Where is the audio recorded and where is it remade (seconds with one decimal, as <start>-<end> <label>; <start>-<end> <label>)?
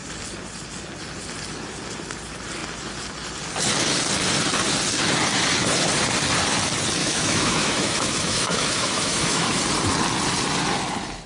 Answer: 0.0-7.0 recorded; 7.0-9.6 remade; 9.6-11.3 recorded